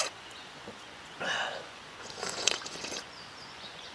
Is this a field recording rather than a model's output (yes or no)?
no